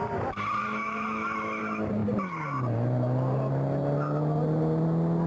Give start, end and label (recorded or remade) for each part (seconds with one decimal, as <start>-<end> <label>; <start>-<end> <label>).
0.0-0.6 recorded; 0.6-1.6 remade; 1.6-5.3 recorded